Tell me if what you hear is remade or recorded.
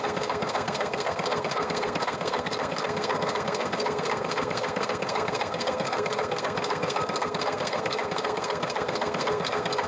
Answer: remade